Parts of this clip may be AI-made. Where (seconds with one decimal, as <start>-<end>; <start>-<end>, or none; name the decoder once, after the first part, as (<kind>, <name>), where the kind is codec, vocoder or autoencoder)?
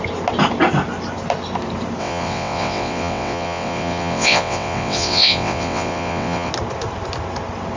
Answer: 2.0-6.5 (vocoder, WaveNeXt)